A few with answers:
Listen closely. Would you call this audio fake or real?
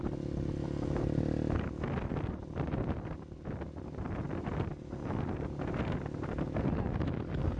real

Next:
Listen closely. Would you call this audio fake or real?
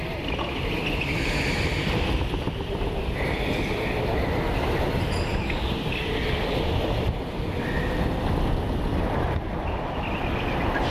real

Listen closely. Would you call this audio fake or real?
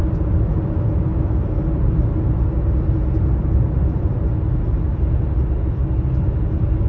real